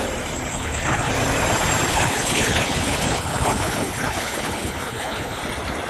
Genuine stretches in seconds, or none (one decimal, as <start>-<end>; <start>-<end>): 0.0-0.5; 1.1-1.9; 5.4-5.9